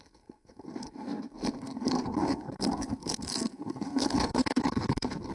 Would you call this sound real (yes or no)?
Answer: no